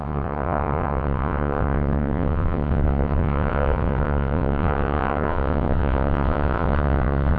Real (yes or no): no